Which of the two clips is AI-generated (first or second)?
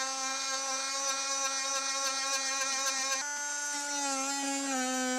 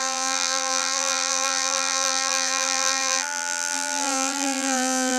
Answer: second